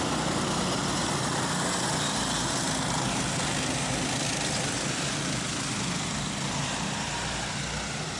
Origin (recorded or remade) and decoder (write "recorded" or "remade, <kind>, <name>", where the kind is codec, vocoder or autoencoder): recorded